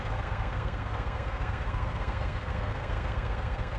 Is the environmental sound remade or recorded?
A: remade